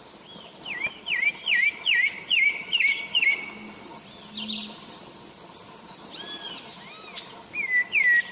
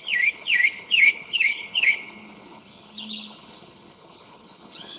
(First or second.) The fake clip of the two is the second